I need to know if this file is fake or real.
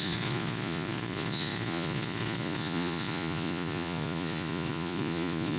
fake